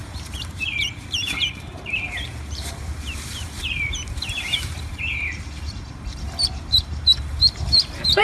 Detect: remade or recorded remade